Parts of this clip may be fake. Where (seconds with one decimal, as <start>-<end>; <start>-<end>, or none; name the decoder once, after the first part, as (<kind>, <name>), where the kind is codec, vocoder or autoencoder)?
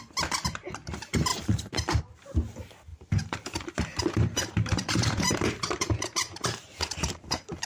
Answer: 1.3-2.0 (vocoder, BigVGAN v2); 2.9-7.7